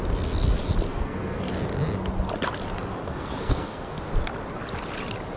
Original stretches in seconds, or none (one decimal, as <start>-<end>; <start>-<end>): 0.0-0.9; 1.5-3.0; 4.0-5.4